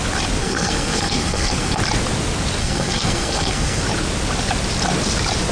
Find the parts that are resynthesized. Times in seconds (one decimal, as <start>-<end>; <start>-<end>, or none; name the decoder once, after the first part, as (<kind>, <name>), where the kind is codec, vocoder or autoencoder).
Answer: 0.4-1.8 (codec, SNAC); 2.6-3.8